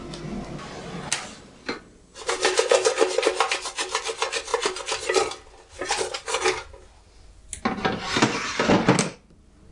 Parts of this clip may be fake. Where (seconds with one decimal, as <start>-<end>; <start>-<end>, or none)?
none